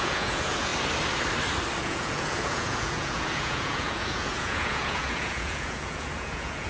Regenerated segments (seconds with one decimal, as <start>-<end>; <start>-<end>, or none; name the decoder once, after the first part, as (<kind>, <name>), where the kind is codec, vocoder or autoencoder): 0.0-0.7 (vocoder, Vocos); 1.8-6.7